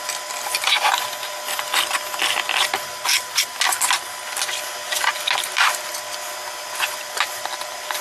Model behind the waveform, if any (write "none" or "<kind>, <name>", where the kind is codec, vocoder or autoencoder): none